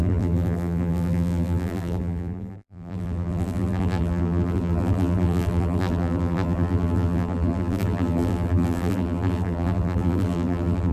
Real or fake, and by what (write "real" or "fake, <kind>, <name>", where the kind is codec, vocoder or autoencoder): fake, vocoder, BigVGAN v2